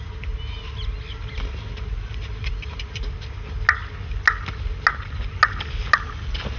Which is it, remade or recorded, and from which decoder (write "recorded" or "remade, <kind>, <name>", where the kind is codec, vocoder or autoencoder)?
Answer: recorded